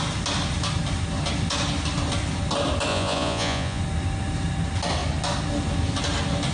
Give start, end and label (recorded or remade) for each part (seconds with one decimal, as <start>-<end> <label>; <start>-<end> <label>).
0.0-2.9 recorded; 2.9-3.8 remade; 3.8-6.5 recorded